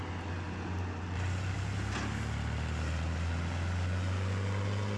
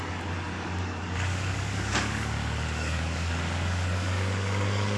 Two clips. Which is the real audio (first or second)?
first